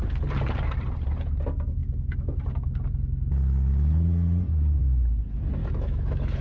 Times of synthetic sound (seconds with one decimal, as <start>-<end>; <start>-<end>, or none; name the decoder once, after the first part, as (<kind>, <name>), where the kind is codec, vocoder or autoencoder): 5.6-6.4 (autoencoder, DAC-VAE)